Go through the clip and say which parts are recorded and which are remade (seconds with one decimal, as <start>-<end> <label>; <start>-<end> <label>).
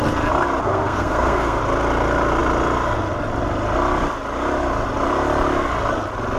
0.0-0.6 recorded; 0.6-1.6 remade; 1.6-6.4 recorded